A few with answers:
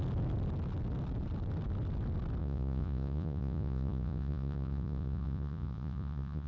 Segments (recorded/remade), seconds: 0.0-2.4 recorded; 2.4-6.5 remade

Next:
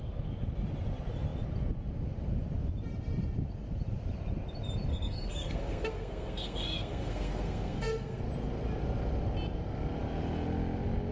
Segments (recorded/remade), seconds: 0.0-4.9 recorded; 4.9-8.2 remade; 8.2-11.1 recorded

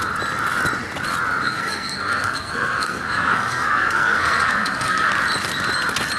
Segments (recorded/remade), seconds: 0.0-1.4 recorded; 1.4-5.1 remade; 5.1-6.2 recorded

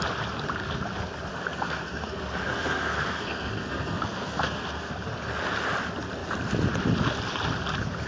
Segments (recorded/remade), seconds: 0.0-1.3 recorded; 1.3-4.9 remade; 4.9-8.1 recorded

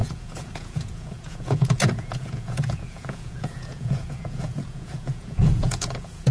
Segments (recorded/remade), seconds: 0.0-6.3 remade